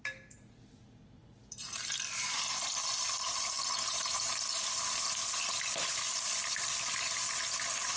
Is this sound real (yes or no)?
yes